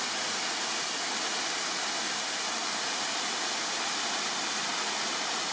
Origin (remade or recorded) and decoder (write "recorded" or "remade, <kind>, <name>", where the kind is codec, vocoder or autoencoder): recorded